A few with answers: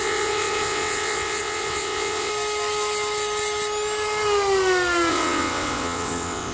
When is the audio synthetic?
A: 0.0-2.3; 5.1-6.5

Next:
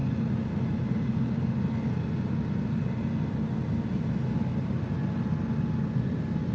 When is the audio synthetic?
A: none

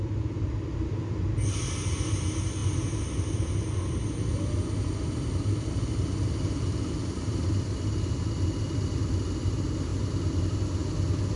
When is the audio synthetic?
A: none